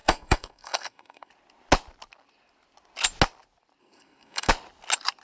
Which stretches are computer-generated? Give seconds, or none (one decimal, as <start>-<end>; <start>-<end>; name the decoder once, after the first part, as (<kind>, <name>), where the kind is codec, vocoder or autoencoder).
0.0-1.3 (codec, SNAC); 3.8-4.5